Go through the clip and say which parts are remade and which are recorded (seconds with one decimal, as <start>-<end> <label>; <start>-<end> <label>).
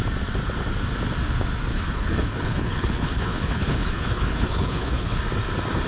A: 0.0-1.7 recorded; 1.7-5.2 remade; 5.2-5.9 recorded